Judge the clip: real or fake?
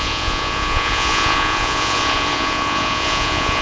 fake